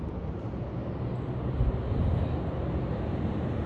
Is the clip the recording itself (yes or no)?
yes